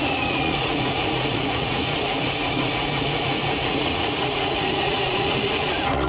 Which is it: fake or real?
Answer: fake